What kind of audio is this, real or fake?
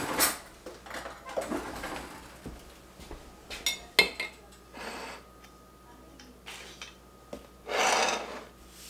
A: real